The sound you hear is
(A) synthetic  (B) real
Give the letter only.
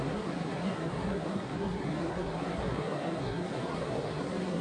A